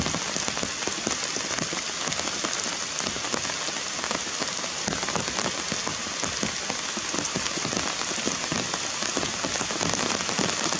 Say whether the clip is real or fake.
real